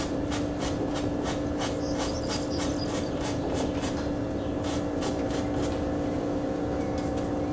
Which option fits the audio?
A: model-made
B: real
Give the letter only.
B